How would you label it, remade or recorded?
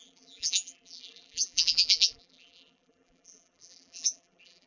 remade